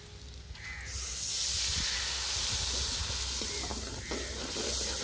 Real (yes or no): yes